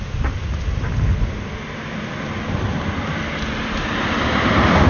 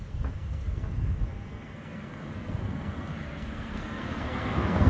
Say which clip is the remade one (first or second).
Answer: second